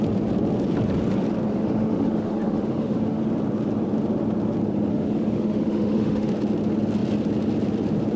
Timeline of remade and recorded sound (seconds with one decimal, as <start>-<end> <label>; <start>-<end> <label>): 0.0-1.5 recorded; 1.5-3.2 remade; 3.2-4.9 recorded; 4.9-6.3 remade; 6.3-8.2 recorded